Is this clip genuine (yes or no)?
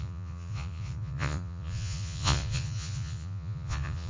no